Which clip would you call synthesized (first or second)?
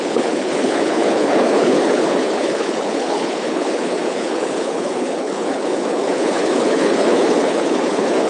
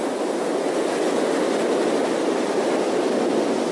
first